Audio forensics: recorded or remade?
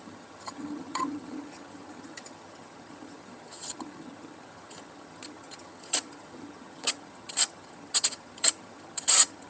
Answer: remade